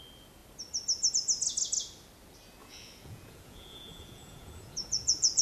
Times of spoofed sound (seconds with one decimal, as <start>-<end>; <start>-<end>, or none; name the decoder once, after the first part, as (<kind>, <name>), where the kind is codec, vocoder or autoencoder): 2.6-5.4 (vocoder, Vocos)